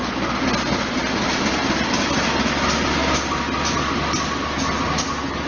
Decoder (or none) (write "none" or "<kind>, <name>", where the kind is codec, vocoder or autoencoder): none